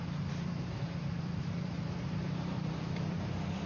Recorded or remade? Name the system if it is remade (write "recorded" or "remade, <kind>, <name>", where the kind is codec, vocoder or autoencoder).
remade, vocoder, BigVGAN v2